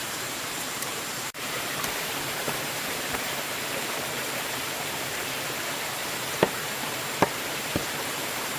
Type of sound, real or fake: fake